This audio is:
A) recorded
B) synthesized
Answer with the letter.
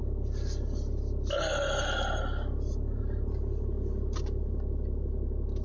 A